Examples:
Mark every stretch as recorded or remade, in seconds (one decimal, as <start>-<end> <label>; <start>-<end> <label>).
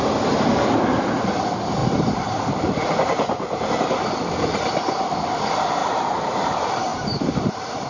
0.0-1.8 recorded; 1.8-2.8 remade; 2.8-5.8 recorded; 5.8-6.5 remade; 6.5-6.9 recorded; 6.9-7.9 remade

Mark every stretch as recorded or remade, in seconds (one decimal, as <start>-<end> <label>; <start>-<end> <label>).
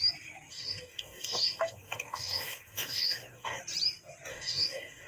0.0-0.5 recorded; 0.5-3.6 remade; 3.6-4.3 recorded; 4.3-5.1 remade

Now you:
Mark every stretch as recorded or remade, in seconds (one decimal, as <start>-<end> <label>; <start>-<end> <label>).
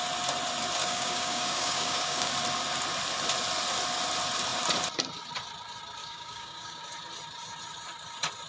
0.0-0.8 recorded; 0.8-2.3 remade; 2.3-6.0 recorded; 6.0-6.8 remade; 6.8-8.5 recorded